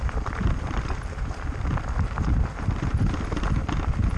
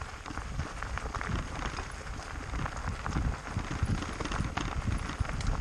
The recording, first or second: second